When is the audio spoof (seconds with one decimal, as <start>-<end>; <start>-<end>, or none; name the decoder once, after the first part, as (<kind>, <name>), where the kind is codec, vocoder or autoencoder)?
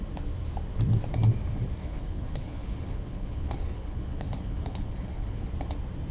1.8-5.5 (codec, HILCodec)